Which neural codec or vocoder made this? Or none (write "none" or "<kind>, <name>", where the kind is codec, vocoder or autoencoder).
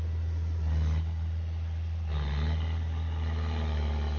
none